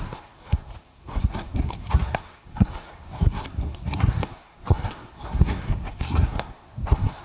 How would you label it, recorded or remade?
remade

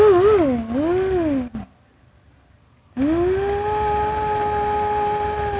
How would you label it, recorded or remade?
recorded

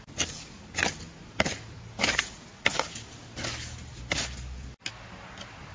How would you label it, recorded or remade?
recorded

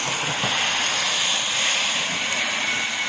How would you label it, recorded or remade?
recorded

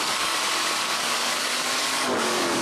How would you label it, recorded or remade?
remade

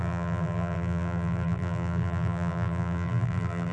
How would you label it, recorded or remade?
remade